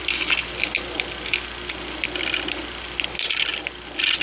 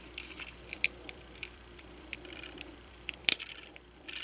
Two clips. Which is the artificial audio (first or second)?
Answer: second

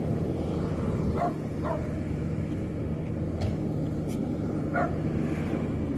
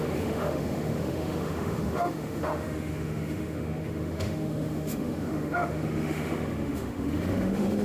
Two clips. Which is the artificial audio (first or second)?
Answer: second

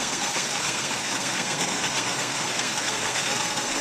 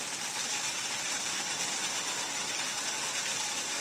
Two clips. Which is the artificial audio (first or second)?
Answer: first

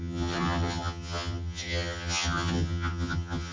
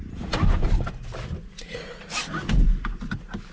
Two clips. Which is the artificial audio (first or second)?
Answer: first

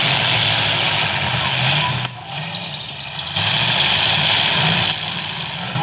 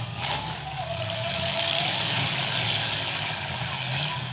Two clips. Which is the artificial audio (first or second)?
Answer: second